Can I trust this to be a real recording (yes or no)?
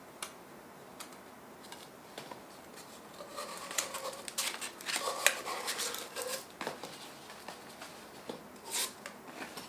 yes